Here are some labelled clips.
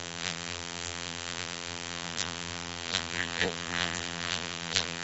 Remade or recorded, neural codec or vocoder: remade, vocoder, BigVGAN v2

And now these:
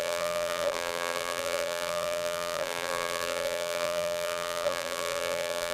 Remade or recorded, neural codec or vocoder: remade, vocoder, BigVGAN v2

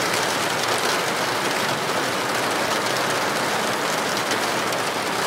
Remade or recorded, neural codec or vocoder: recorded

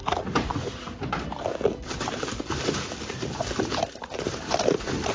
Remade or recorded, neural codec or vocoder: remade, vocoder, BigVGAN v2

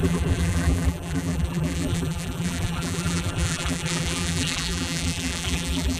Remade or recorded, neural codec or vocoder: remade, vocoder, BigVGAN v2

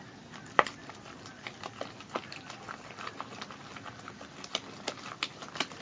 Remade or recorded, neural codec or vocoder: remade, vocoder, BigVGAN v2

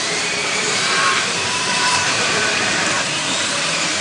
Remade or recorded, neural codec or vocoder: remade, vocoder, BigVGAN v2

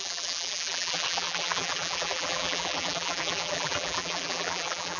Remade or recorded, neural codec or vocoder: remade, vocoder, BigVGAN v2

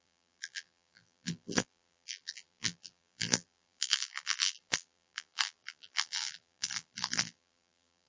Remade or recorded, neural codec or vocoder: remade, vocoder, BigVGAN v2